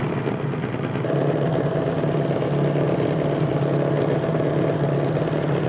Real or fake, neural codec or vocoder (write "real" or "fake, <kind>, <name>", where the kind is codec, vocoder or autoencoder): real